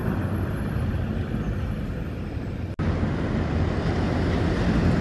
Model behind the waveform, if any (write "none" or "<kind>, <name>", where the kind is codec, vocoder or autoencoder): none